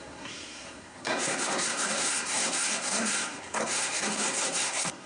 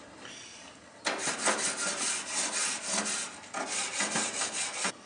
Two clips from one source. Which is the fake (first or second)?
first